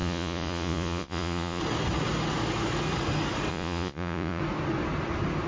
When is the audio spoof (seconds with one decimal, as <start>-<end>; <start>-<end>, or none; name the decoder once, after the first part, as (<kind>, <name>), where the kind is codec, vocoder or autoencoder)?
0.0-1.6 (vocoder, Vocos); 3.5-4.4